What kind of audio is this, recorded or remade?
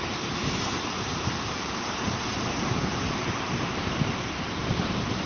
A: remade